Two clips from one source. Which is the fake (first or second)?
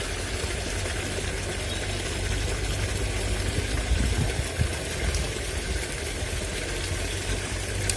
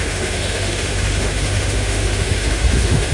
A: second